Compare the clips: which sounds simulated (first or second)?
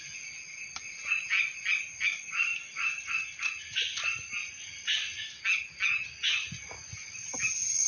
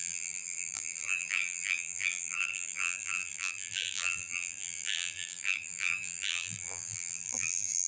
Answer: second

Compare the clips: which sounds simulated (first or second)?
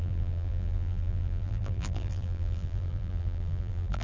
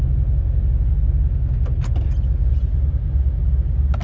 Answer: first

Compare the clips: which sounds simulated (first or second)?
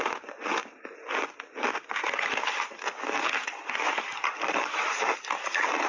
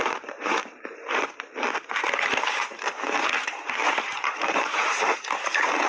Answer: second